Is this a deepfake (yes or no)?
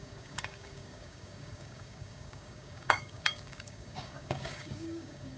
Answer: yes